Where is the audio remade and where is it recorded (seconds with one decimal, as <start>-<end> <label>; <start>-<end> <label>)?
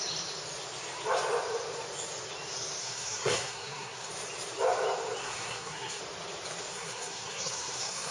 0.0-2.8 recorded; 2.8-4.1 remade; 4.1-5.2 recorded; 5.2-6.0 remade; 6.0-6.7 recorded; 6.7-8.1 remade